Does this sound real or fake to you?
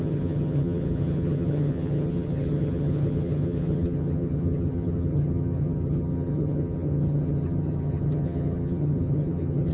fake